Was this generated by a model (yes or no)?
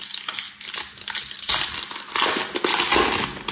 no